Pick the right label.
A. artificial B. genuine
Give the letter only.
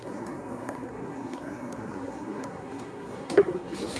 A